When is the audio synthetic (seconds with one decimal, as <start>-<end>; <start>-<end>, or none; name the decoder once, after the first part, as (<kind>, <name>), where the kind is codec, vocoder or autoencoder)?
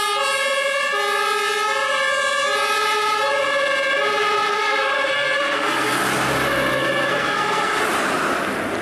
4.5-6.0 (codec, SNAC); 6.7-7.8